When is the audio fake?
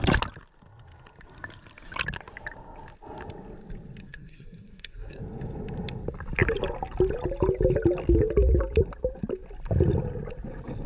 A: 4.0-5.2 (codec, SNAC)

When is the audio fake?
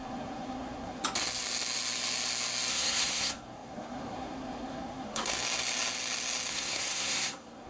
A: 0.0-1.0 (codec, SNAC); 2.7-5.3; 6.5-7.7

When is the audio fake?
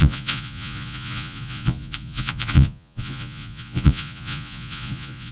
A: 0.0-5.3 (vocoder, Vocos)